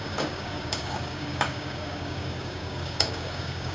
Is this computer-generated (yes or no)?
yes